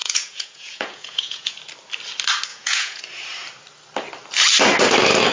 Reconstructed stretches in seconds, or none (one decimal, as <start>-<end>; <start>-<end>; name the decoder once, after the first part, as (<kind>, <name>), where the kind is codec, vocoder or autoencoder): 0.0-1.6 (vocoder, Vocos); 2.5-3.0